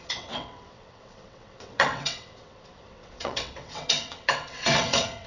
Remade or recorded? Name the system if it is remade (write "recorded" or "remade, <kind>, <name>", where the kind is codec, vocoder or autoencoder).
remade, vocoder, WaveNeXt